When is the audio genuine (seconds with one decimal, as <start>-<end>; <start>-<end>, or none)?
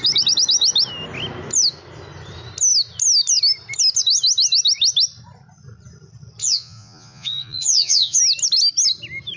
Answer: 0.0-6.4; 8.2-9.4